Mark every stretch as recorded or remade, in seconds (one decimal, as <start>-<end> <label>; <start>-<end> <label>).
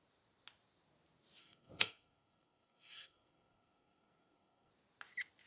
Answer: 0.0-1.4 recorded; 1.4-4.7 remade; 4.7-5.5 recorded